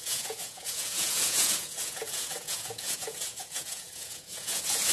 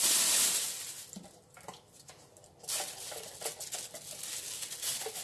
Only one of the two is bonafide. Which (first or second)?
second